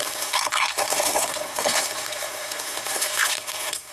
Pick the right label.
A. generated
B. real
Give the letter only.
A